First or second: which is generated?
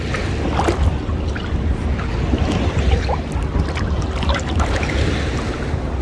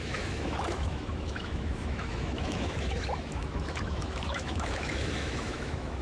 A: second